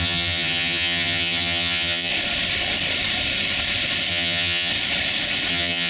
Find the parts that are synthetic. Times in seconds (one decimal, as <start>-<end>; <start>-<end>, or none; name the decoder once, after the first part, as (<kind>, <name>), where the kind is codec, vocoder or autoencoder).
0.0-2.1 (vocoder, HiFi-GAN); 4.1-4.7; 5.5-5.9

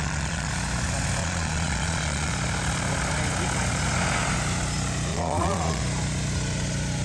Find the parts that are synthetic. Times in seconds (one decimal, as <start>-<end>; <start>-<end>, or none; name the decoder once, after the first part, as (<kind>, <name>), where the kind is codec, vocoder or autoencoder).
0.0-0.5 (vocoder, Vocos); 1.2-2.3; 5.1-5.8

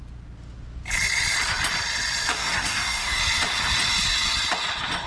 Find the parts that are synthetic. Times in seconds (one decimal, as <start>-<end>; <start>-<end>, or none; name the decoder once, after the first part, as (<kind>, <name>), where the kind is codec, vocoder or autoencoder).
2.3-3.2 (codec, DAC)

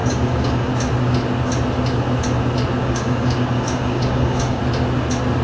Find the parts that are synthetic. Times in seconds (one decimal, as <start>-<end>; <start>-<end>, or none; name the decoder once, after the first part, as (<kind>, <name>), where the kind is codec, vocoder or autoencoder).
0.0-0.7 (codec, DAC); 2.8-4.6

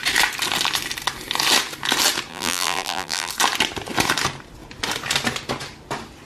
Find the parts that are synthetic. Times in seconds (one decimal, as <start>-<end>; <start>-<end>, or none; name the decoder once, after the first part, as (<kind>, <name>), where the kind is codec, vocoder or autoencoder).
2.3-3.3 (vocoder, BigVGAN v2)

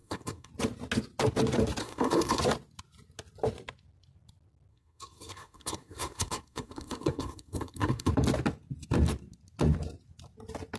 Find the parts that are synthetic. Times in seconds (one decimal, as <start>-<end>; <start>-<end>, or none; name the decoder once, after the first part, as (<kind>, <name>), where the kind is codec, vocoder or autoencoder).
0.0-0.5 (codec, SNAC); 1.8-2.4; 4.7-8.1

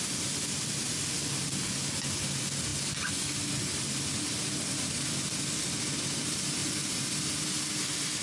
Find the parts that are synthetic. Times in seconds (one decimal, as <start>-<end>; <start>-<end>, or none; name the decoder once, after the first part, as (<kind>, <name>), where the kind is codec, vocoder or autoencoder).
none

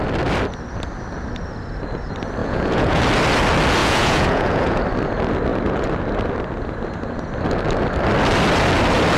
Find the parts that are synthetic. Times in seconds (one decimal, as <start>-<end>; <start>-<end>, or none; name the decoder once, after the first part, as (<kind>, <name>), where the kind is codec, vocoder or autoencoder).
2.4-3.0 (vocoder, Vocos); 3.8-4.8